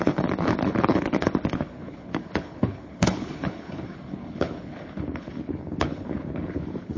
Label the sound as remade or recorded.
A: remade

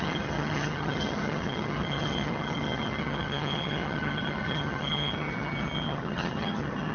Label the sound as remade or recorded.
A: remade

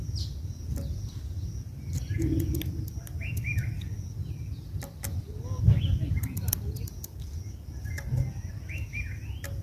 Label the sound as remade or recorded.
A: recorded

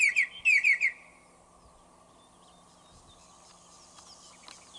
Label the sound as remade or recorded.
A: recorded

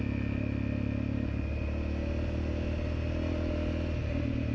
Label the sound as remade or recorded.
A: recorded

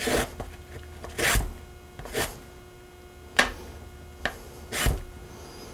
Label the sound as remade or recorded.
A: recorded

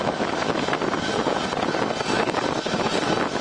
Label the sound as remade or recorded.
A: recorded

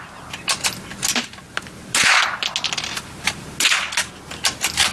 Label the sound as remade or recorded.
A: recorded